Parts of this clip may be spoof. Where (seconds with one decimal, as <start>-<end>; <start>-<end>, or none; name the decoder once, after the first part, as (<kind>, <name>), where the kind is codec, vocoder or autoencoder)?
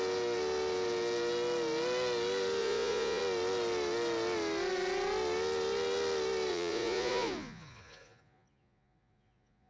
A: 2.6-3.2 (vocoder, Vocos); 6.5-9.7